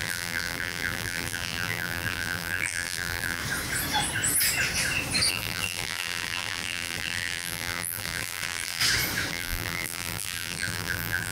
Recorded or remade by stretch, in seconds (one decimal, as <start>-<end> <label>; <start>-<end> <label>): 0.0-3.4 remade; 3.4-5.3 recorded; 5.3-8.8 remade; 8.8-9.3 recorded; 9.3-11.3 remade